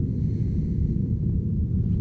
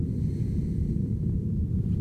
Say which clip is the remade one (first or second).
second